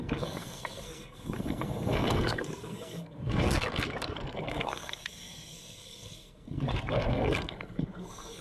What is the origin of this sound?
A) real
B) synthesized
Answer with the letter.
B